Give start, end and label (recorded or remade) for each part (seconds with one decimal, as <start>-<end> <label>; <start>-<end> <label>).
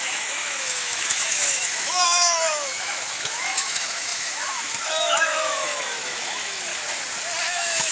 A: 0.0-6.7 remade; 6.7-7.4 recorded; 7.4-7.9 remade